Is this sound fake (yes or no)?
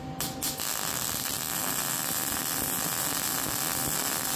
no